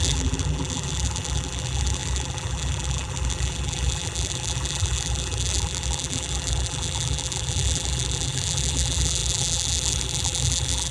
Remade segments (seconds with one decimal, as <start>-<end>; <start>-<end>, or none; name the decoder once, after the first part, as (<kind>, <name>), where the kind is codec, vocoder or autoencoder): 0.0-10.9 (vocoder, BigVGAN v2)